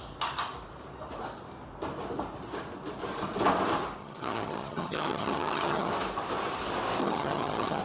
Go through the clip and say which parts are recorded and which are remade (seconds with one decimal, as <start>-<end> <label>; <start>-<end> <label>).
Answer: 0.0-4.0 recorded; 4.0-5.9 remade; 5.9-7.0 recorded; 7.0-7.8 remade